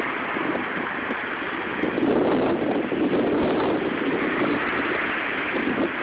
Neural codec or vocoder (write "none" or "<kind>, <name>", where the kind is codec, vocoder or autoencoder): none